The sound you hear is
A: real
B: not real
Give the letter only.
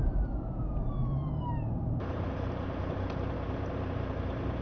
B